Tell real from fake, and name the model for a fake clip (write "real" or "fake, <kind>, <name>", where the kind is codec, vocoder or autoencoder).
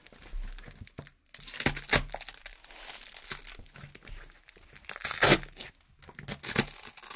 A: real